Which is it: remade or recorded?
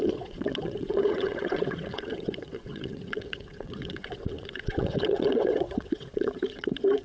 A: remade